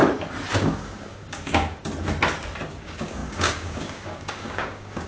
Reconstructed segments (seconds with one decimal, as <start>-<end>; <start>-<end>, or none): 0.5-1.8; 2.7-5.1